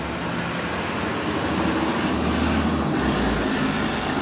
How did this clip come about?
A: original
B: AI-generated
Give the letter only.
A